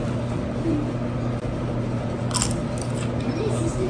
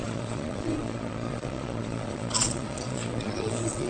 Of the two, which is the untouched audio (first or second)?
first